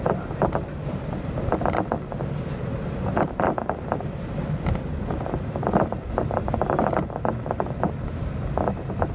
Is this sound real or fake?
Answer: real